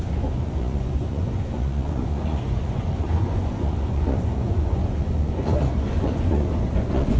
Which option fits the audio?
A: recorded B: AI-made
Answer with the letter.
B